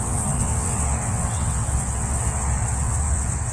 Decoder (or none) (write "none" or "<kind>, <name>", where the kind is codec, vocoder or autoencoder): vocoder, WaveNeXt